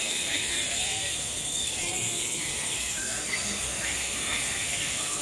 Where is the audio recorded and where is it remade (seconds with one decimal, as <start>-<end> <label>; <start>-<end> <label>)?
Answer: 0.0-5.2 remade